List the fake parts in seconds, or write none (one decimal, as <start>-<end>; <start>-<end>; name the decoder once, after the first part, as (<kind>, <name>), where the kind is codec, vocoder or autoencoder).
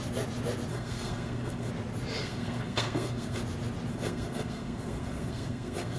0.7-1.7 (codec, SNAC); 2.2-3.4; 3.9-6.0